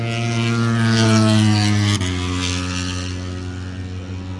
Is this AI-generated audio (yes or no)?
no